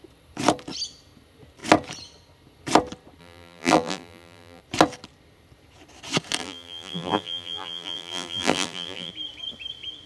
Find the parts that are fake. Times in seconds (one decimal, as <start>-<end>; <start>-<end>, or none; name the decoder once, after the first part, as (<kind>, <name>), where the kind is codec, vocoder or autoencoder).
3.2-4.6 (vocoder, BigVGAN v2); 6.4-9.1